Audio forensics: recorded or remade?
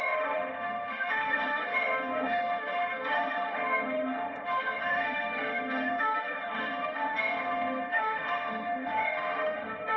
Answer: remade